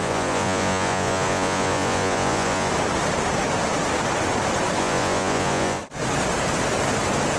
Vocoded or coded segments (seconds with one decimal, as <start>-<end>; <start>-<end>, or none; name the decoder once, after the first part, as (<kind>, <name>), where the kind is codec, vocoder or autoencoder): 0.0-2.7 (vocoder, Vocos); 4.8-5.8